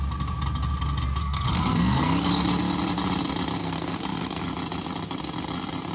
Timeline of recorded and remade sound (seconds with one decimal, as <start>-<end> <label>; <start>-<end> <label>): 0.0-1.2 recorded; 1.2-2.3 remade; 2.3-3.6 recorded; 3.6-4.4 remade; 4.4-5.9 recorded